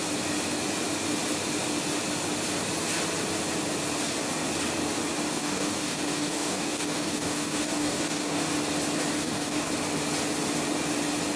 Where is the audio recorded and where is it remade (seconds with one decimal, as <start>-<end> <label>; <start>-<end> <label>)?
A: 0.0-5.3 recorded; 5.3-8.4 remade; 8.4-9.2 recorded; 9.2-9.7 remade; 9.7-11.4 recorded